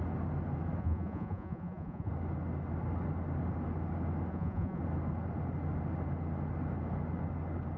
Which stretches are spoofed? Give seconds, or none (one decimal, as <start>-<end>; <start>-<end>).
0.8-2.1; 4.3-4.8